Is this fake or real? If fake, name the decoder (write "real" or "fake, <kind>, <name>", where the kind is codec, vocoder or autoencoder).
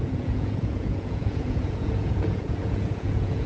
fake, vocoder, Vocos